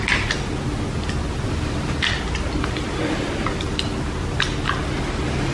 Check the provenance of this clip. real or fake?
real